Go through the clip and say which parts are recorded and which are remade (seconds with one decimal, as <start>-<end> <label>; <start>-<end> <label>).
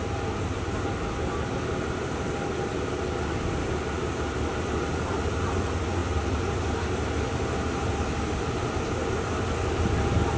0.0-10.4 recorded